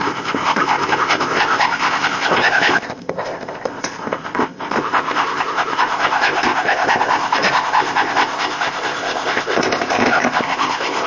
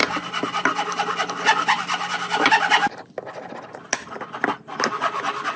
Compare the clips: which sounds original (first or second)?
second